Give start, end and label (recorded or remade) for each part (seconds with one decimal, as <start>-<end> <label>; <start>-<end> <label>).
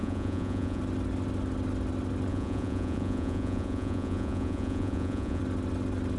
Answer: 0.0-0.8 remade; 0.8-2.3 recorded; 2.3-5.4 remade; 5.4-6.2 recorded